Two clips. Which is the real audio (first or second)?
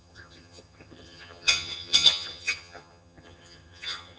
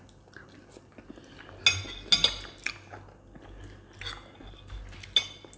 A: second